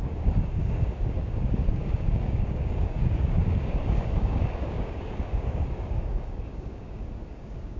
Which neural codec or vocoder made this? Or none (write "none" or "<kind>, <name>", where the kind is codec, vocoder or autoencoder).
codec, DAC